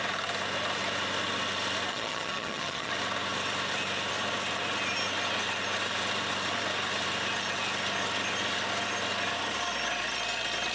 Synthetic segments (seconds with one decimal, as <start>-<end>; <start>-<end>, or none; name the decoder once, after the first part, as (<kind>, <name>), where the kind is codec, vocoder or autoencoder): 1.9-2.9 (vocoder, HiFi-GAN)